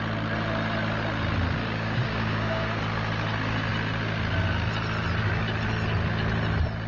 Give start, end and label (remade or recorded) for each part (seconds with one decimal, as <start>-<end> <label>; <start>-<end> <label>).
0.0-1.6 recorded; 1.6-2.8 remade; 2.8-6.9 recorded

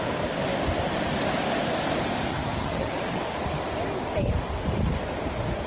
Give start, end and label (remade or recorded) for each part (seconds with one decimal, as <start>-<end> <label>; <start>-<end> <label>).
0.0-2.3 recorded; 2.3-2.9 remade; 2.9-5.7 recorded